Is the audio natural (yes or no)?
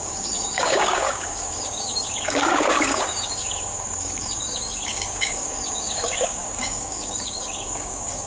no